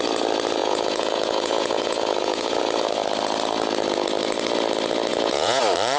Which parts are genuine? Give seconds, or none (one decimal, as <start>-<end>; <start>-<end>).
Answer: 0.0-0.6; 2.6-5.1; 5.6-6.0